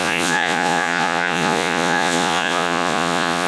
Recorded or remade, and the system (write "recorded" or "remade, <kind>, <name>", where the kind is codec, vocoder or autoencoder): remade, vocoder, Vocos